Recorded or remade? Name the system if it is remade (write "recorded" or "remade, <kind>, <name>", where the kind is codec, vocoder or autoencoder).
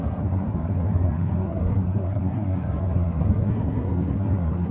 remade, codec, SNAC